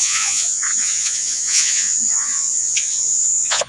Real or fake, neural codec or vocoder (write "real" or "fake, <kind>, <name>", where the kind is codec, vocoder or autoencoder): fake, vocoder, Vocos